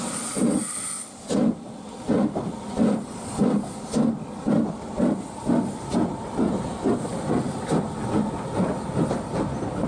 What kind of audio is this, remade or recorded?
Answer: recorded